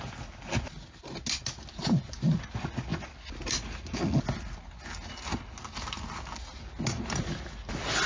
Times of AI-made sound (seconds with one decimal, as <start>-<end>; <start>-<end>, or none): none